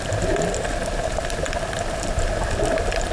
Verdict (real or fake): real